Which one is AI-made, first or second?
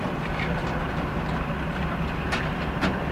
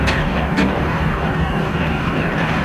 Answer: second